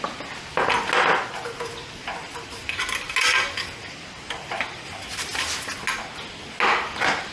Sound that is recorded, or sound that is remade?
recorded